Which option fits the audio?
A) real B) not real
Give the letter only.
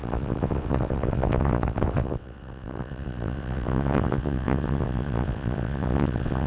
B